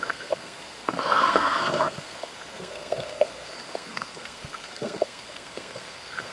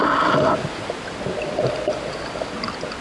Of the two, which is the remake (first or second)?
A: first